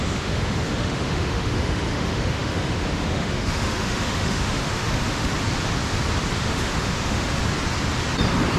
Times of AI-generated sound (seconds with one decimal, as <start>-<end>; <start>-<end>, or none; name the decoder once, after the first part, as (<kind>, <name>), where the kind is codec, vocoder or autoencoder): 0.0-5.3 (autoencoder, DAC-VAE); 6.4-7.4